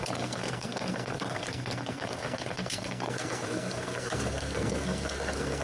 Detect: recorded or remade remade